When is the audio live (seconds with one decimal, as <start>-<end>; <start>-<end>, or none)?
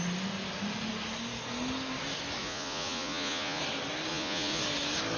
0.0-2.4; 3.6-4.1; 4.6-5.2